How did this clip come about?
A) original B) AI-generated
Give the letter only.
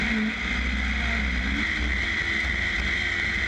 A